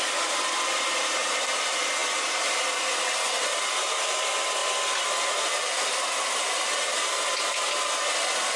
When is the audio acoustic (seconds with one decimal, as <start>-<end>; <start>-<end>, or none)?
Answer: 0.0-8.6